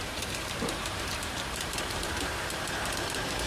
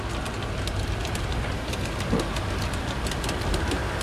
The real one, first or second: second